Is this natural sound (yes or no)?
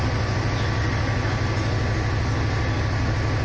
yes